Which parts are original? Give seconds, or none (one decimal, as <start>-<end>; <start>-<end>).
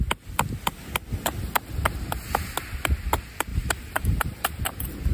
0.0-3.5; 4.6-5.1